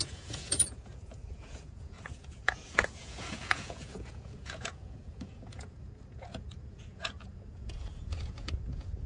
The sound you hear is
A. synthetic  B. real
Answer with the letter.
A